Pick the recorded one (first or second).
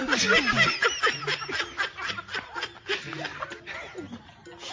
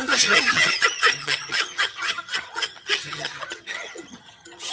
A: first